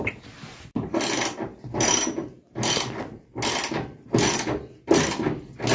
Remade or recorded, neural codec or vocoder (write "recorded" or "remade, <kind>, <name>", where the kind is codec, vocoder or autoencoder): recorded